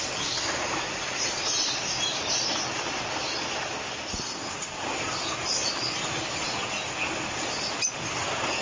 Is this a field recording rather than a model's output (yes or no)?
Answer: yes